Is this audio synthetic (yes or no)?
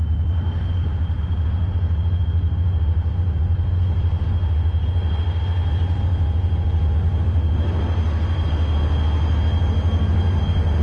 no